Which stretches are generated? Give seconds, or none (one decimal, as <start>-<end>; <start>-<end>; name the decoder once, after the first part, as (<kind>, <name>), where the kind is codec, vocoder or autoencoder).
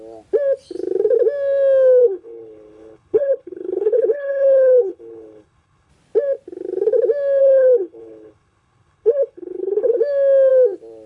2.0-5.9 (codec, HILCodec); 7.4-10.0